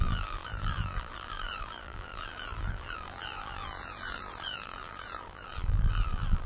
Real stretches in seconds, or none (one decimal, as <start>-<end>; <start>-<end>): none